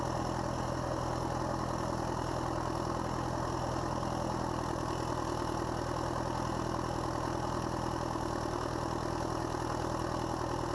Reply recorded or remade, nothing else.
recorded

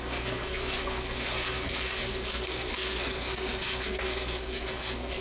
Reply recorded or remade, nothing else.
remade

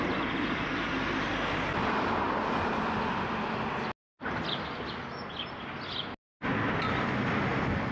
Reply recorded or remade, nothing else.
recorded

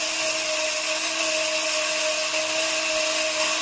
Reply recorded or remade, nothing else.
recorded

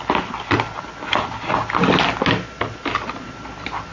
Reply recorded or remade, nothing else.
recorded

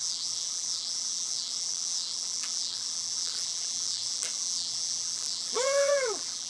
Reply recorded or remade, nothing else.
remade